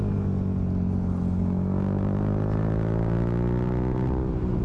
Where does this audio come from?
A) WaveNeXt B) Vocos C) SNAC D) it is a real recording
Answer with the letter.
D